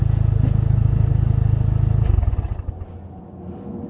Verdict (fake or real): real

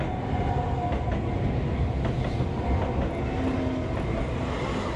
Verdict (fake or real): real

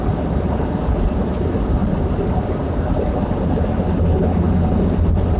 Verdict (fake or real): real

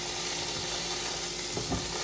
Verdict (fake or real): real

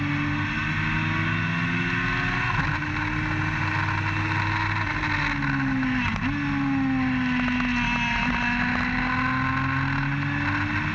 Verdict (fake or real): real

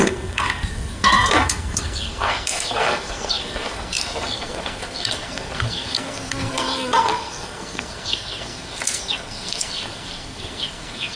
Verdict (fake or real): fake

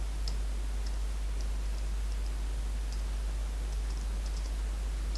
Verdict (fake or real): real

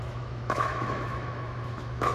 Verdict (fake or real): fake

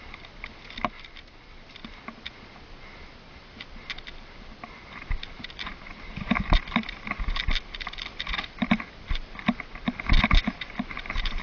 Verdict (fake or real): real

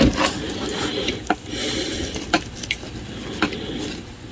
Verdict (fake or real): real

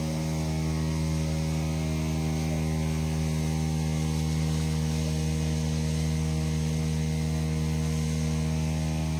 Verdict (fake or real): real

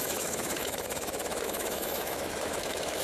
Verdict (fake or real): fake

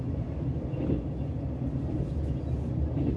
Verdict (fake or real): real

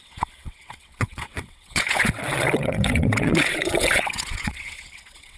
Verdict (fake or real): fake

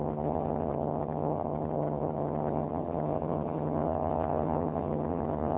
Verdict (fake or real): fake